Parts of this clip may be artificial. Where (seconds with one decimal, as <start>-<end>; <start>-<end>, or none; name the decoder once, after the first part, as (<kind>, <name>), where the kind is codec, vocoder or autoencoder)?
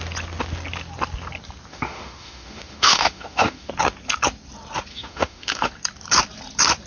1.7-3.7 (autoencoder, DAC-VAE); 4.9-5.7